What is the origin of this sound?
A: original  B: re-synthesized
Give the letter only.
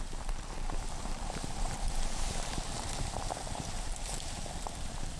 B